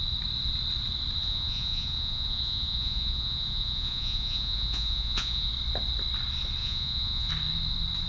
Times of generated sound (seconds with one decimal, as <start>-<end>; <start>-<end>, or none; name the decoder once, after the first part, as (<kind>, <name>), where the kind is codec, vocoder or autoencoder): 1.2-5.5 (vocoder, Vocos); 6.6-7.3